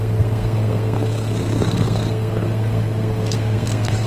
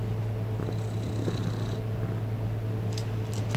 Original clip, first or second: second